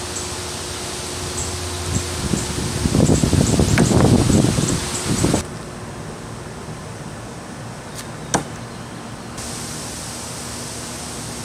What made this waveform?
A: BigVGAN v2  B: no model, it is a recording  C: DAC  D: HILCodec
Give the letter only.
B